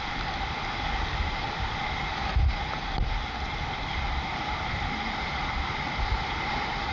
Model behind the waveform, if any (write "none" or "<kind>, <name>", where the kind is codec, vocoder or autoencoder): vocoder, BigVGAN v2